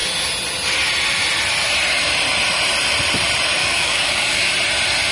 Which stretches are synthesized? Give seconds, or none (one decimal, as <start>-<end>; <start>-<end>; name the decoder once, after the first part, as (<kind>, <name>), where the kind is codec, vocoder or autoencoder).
3.6-4.5 (codec, DAC)